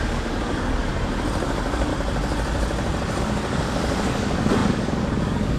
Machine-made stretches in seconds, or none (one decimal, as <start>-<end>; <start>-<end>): 0.0-0.9; 1.4-1.9; 3.2-5.6